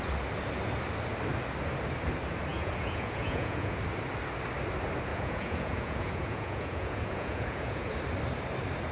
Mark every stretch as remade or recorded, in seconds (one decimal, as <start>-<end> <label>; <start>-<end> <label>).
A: 0.0-2.5 recorded; 2.5-3.8 remade; 3.8-5.1 recorded; 5.1-7.9 remade; 7.9-8.9 recorded